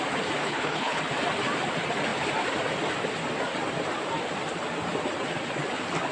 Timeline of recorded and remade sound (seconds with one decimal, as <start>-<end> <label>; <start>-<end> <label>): 0.0-0.4 recorded; 0.4-1.0 remade; 1.0-6.1 recorded